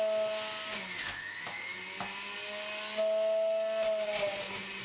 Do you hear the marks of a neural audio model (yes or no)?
no